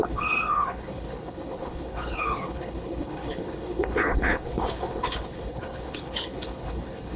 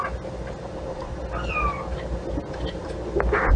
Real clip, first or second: second